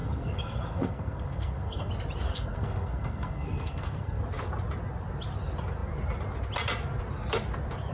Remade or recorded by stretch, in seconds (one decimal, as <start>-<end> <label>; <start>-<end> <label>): 0.0-1.9 remade; 1.9-2.3 recorded; 2.3-4.2 remade; 4.2-7.9 recorded